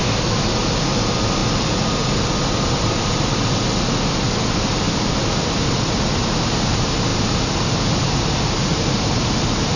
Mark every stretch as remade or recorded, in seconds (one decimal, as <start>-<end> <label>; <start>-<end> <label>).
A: 0.0-9.8 recorded